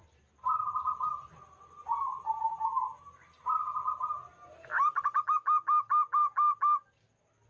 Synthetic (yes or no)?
no